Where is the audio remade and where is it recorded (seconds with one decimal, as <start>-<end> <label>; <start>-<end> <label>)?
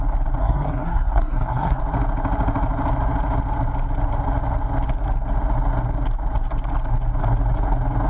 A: 0.0-0.4 recorded; 0.4-1.8 remade; 1.8-8.1 recorded